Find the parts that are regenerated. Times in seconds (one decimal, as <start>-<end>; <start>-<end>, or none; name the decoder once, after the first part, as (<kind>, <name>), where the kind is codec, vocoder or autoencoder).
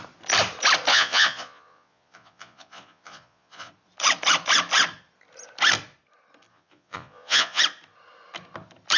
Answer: 0.9-3.7 (vocoder, Vocos); 6.5-7.6